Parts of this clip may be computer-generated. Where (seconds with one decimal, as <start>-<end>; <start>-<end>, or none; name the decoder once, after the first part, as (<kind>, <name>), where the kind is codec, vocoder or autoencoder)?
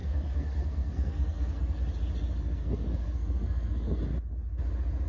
0.0-1.8 (codec, SNAC); 2.4-4.0